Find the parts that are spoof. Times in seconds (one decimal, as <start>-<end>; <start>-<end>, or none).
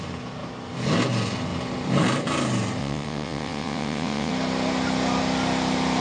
2.8-4.3